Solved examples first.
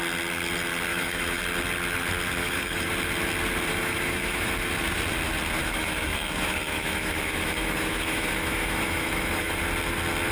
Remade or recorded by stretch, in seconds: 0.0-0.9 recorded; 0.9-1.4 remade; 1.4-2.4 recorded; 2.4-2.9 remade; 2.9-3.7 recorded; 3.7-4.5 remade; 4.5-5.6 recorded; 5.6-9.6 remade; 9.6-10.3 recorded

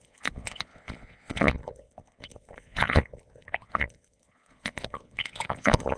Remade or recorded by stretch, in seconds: 0.0-6.0 remade

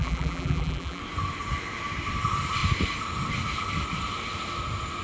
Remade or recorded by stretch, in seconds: 0.0-1.0 remade; 1.0-5.0 recorded